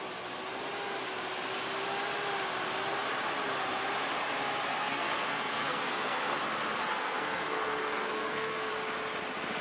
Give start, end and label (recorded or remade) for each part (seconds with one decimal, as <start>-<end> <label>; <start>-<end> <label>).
0.0-4.7 recorded; 4.7-6.4 remade; 6.4-6.9 recorded; 6.9-8.7 remade; 8.7-9.6 recorded